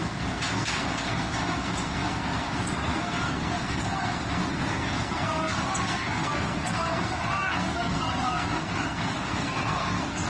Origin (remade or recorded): remade